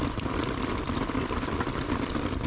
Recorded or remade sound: recorded